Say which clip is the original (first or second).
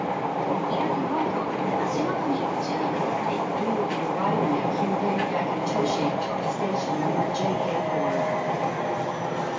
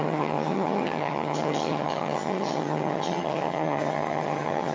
first